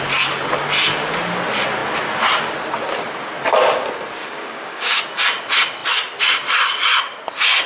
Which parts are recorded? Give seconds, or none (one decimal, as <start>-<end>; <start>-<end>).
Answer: 0.0-4.2; 5.0-7.7